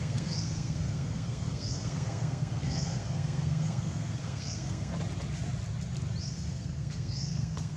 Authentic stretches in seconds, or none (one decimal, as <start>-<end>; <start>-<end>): 4.9-6.2